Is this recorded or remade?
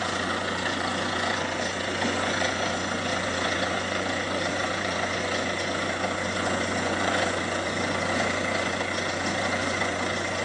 remade